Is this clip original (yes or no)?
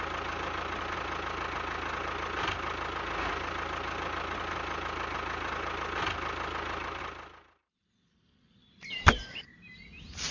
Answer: yes